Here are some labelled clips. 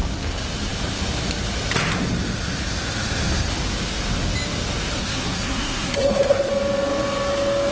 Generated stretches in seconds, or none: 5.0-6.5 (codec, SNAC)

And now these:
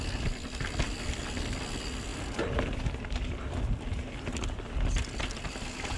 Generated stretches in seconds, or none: none